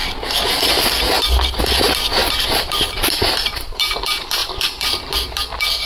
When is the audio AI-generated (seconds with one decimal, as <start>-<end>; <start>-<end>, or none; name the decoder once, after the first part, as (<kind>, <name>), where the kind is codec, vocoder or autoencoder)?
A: 2.2-3.9 (vocoder, BigVGAN v2); 4.4-5.4

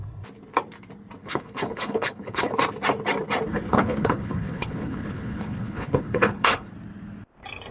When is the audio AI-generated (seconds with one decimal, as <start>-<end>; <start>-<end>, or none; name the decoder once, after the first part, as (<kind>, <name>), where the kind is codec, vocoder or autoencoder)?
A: 1.2-2.5 (codec, HILCodec); 3.7-6.7

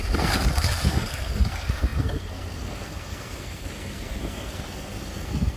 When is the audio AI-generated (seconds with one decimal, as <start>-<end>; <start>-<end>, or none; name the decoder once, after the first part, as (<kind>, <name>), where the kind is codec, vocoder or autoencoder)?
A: 0.0-5.6 (codec, SNAC)